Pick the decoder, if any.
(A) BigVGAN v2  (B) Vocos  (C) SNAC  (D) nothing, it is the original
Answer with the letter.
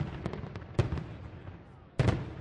D